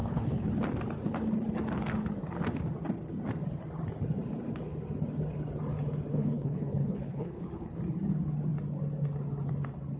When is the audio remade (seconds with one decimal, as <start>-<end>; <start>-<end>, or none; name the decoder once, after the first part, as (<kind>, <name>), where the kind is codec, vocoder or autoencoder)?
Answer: 0.0-0.5 (codec, HILCodec); 6.1-7.8